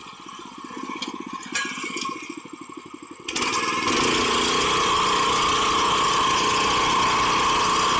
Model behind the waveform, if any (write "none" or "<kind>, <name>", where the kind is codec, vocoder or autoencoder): none